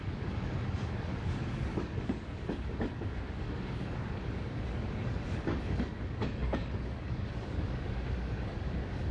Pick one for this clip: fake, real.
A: fake